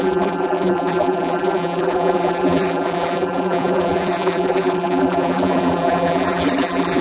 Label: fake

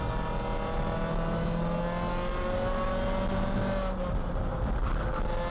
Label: real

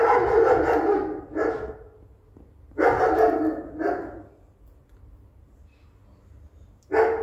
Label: real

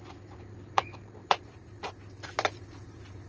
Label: fake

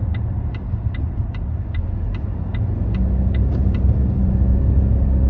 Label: real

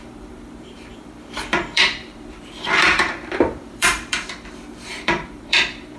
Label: fake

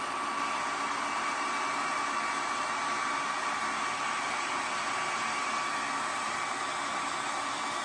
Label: real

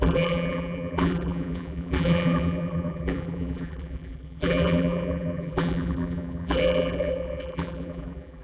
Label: fake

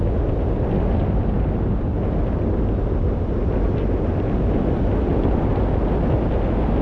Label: real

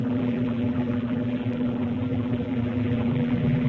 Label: fake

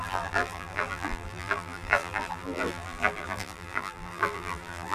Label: fake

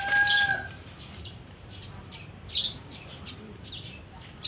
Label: fake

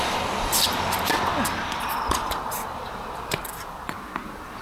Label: fake